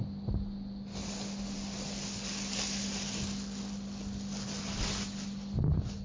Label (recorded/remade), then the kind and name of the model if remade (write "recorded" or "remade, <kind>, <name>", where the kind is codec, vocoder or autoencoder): recorded